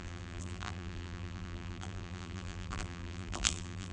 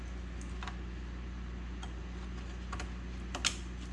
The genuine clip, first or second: second